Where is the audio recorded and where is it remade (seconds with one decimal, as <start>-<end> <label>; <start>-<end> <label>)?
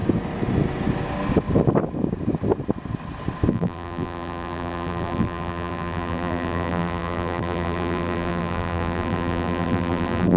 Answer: 0.0-3.5 recorded; 3.5-10.4 remade